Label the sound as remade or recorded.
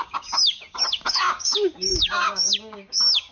remade